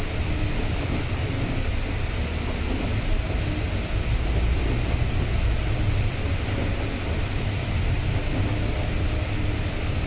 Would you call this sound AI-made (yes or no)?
no